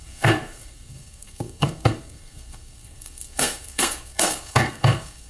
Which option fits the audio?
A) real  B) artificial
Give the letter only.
B